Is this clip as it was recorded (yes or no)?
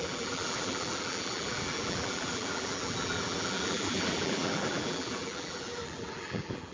no